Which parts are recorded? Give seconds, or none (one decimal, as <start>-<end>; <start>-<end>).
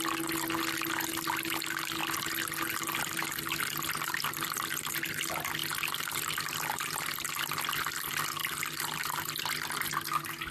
0.0-10.5